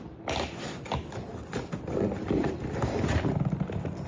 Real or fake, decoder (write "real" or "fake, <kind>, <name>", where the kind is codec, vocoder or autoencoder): real